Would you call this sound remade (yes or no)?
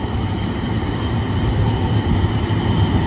no